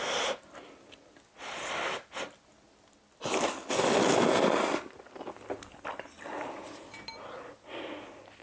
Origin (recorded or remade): recorded